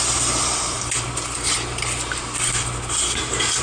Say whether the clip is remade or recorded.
recorded